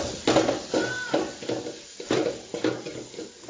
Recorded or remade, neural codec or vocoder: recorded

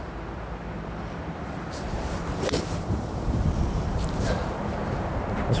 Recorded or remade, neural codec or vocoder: remade, vocoder, BigVGAN v2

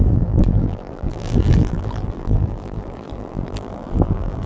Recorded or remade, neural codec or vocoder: remade, vocoder, BigVGAN v2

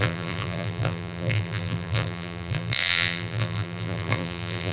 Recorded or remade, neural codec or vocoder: remade, vocoder, BigVGAN v2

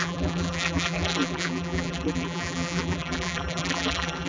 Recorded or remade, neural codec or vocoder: remade, vocoder, BigVGAN v2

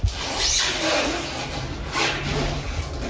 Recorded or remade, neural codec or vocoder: recorded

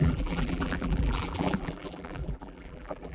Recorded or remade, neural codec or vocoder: remade, vocoder, BigVGAN v2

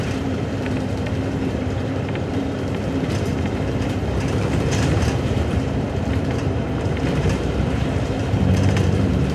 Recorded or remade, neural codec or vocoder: remade, vocoder, BigVGAN v2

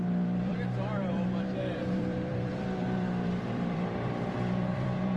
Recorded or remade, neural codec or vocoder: remade, vocoder, BigVGAN v2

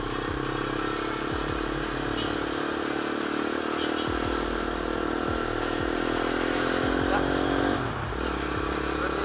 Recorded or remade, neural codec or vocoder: recorded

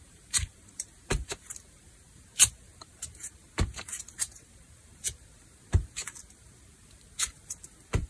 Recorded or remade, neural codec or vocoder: remade, vocoder, BigVGAN v2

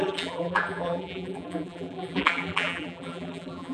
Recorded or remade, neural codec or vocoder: remade, vocoder, BigVGAN v2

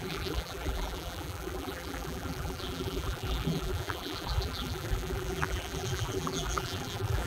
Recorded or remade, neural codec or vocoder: remade, vocoder, BigVGAN v2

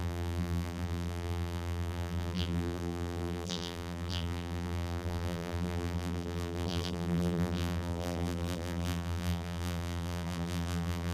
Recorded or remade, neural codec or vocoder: remade, vocoder, BigVGAN v2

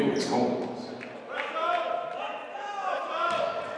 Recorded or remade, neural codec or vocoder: recorded